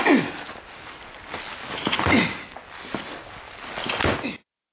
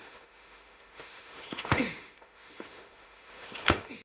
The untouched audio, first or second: first